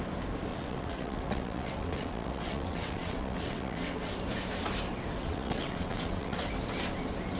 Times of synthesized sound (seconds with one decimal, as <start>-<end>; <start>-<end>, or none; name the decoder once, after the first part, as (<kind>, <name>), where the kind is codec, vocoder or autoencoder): 0.5-4.1 (vocoder, WaveNeXt); 5.1-6.5